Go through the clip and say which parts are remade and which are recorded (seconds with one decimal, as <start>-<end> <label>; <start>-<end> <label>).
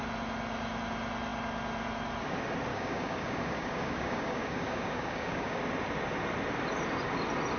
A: 0.0-2.7 recorded; 2.7-5.6 remade; 5.6-7.6 recorded